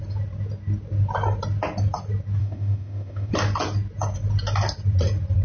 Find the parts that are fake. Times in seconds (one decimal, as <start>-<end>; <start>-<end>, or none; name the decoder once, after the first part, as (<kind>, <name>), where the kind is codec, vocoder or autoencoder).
2.4-3.3 (autoencoder, DAC-VAE)